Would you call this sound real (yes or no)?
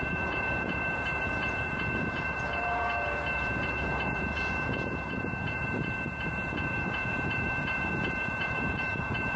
no